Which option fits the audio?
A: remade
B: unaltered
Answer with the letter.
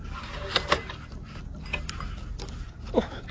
B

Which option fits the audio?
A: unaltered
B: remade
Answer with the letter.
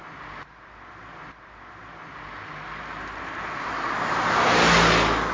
A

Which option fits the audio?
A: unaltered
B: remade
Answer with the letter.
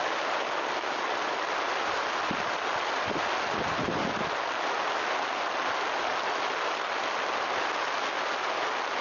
A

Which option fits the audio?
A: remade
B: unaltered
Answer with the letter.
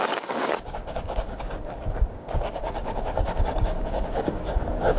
A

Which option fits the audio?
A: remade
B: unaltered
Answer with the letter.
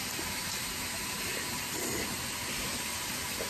B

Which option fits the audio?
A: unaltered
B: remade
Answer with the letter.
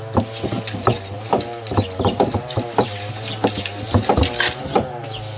A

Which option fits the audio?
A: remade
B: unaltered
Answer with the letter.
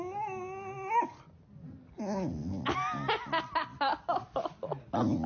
B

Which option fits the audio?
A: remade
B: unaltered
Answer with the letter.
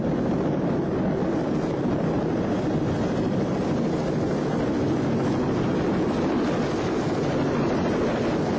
B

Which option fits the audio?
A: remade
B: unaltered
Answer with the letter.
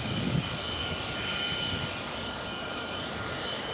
A